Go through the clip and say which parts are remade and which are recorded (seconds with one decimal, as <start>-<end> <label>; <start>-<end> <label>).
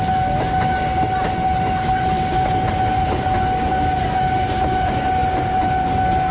0.0-6.3 recorded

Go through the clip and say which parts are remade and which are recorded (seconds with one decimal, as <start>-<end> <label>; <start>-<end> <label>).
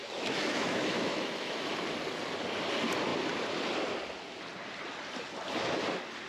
0.0-1.8 remade; 1.8-6.3 recorded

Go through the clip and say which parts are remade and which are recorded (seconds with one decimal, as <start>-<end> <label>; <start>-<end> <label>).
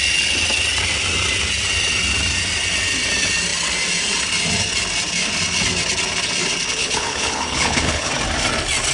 0.0-6.8 recorded; 6.8-8.1 remade; 8.1-8.9 recorded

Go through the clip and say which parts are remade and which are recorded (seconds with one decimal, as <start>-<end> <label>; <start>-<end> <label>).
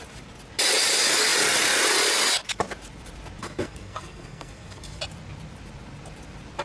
0.0-3.4 recorded; 3.4-5.0 remade; 5.0-6.6 recorded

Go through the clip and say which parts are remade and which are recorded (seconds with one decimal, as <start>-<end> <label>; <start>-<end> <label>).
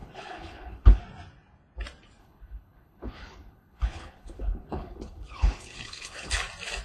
0.0-1.0 remade; 1.0-2.2 recorded; 2.2-6.3 remade; 6.3-6.8 recorded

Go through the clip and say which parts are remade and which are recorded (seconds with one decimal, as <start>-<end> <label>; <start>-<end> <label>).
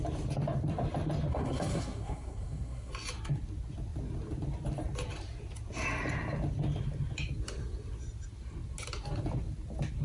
0.0-1.3 recorded; 1.3-2.9 remade; 2.9-10.0 recorded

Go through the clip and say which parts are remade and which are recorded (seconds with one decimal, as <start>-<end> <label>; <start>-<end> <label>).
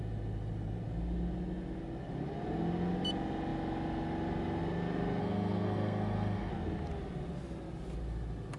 0.0-5.2 recorded; 5.2-6.5 remade; 6.5-8.6 recorded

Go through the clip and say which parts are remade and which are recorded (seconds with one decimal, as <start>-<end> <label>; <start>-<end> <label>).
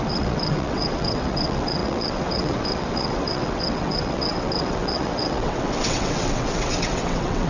0.0-7.5 remade